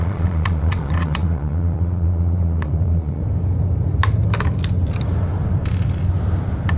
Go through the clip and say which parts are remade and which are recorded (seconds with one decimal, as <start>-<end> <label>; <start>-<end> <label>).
0.0-3.2 remade; 3.2-6.8 recorded